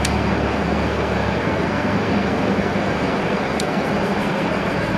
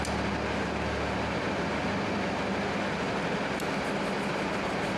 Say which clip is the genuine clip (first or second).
second